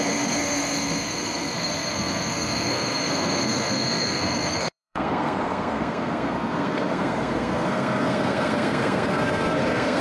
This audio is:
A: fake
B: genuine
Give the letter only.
A